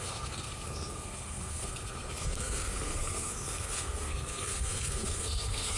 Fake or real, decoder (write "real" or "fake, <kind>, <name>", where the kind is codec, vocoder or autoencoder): fake, codec, SNAC